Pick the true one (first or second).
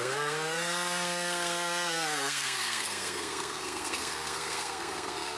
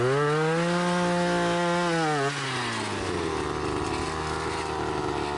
second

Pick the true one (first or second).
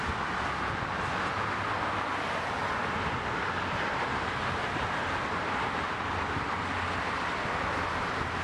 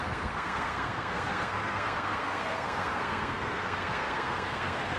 first